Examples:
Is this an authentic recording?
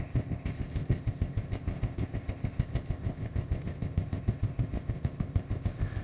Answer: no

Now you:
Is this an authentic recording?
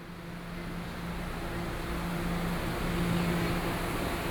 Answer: yes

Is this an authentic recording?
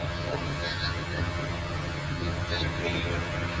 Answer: no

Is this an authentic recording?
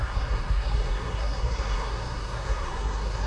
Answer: no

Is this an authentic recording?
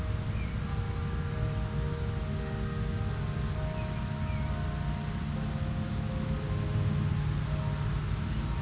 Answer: yes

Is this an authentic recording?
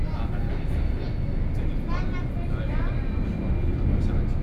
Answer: yes